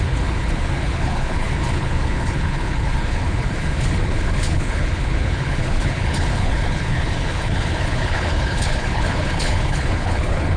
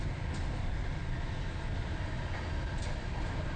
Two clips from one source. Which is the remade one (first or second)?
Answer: first